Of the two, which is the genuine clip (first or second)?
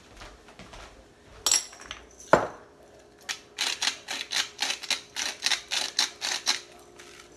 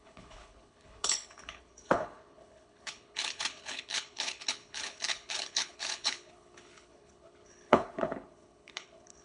first